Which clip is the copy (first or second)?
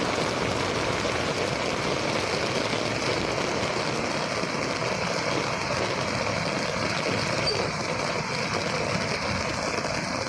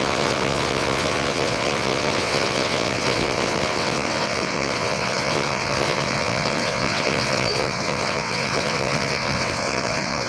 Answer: second